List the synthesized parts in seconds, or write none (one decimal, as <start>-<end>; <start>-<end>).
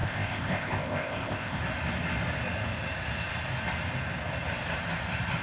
0.0-1.6